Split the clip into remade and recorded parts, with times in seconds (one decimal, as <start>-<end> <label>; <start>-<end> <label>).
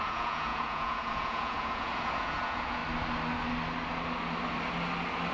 0.0-2.8 remade; 2.8-5.3 recorded